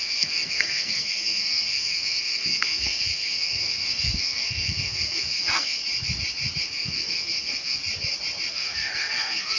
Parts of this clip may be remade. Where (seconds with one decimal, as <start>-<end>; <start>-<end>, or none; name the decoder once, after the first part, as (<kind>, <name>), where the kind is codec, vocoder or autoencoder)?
0.0-5.8 (codec, SNAC); 6.6-7.8; 8.5-9.6